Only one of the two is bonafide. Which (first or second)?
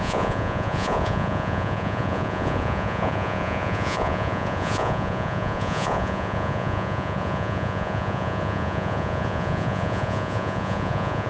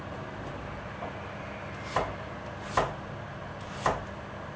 second